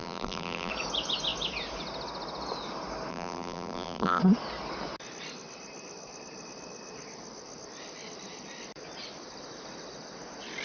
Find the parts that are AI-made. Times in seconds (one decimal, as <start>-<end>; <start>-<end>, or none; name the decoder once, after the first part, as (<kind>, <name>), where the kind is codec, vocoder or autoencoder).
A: 0.0-0.7 (vocoder, BigVGAN v2); 3.1-4.2